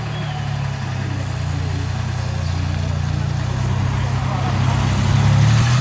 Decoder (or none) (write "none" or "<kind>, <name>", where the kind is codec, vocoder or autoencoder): none